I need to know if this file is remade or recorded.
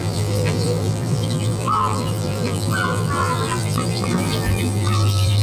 remade